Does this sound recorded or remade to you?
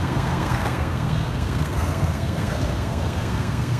remade